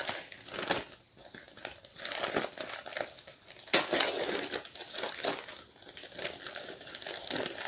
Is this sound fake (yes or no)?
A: no